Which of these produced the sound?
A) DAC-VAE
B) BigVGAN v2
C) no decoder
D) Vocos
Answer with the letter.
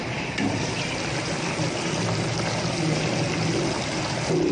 B